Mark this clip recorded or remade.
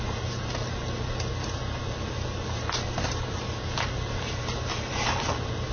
remade